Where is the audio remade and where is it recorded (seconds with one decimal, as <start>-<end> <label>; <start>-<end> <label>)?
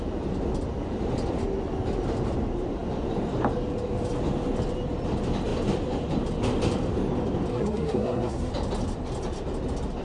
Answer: 0.0-7.5 recorded; 7.5-8.5 remade; 8.5-10.0 recorded